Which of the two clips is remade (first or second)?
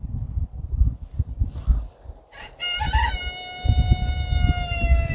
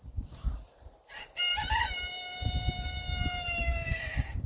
second